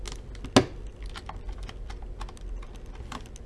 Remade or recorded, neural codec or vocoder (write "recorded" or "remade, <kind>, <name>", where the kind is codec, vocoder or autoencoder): recorded